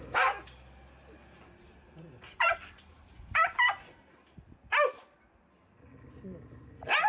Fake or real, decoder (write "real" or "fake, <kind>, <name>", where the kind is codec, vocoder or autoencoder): real